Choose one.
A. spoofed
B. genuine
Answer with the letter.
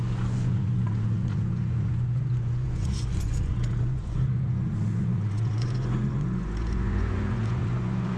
A